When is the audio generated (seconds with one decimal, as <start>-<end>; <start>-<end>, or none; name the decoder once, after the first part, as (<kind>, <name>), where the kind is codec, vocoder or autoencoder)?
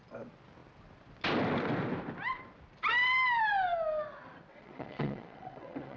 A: 4.5-6.0 (vocoder, WaveNeXt)